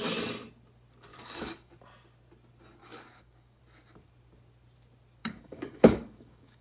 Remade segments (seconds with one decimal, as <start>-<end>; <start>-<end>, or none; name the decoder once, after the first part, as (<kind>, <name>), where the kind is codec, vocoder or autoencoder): 1.1-1.7 (codec, DAC); 2.8-3.6; 5.2-6.6